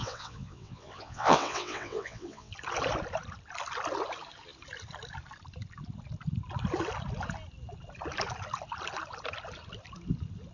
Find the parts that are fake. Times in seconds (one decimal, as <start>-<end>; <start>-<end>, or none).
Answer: 0.0-2.5